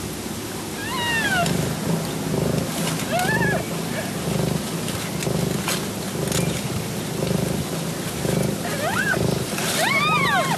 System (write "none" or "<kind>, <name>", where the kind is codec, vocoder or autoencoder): none